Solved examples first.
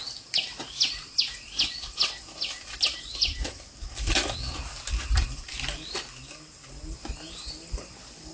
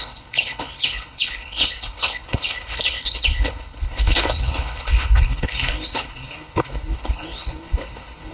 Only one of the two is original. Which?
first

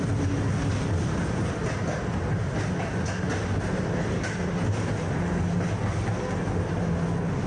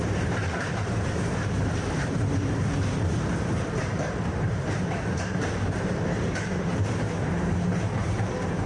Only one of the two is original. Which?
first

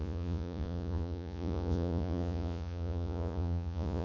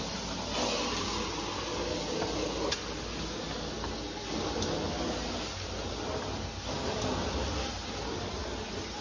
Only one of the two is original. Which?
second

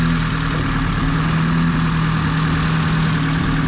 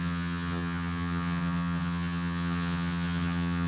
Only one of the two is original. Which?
first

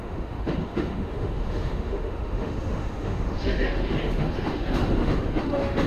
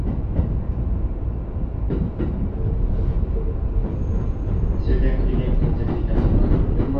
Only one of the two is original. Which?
second